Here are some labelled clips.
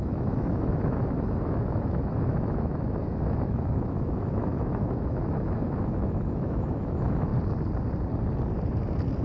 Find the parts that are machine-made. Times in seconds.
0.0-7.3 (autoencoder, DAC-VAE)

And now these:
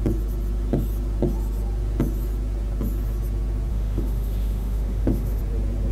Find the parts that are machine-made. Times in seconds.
3.7-5.4 (autoencoder, DAC-VAE)

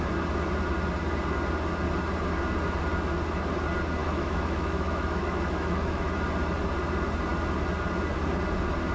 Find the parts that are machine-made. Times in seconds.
4.0-6.1 (autoencoder, DAC-VAE)

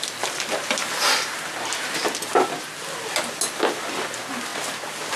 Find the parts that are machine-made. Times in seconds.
none

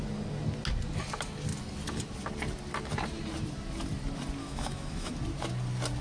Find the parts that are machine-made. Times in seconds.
4.4-5.1 (autoencoder, DAC-VAE)

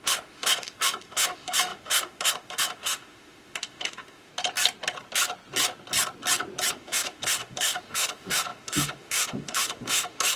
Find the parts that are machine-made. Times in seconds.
0.0-4.3 (autoencoder, DAC-VAE); 6.7-10.4